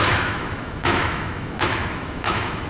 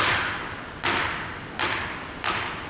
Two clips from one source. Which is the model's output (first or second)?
first